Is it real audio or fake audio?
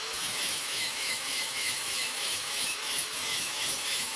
fake